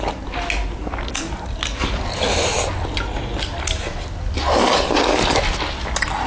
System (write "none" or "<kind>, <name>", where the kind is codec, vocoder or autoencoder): none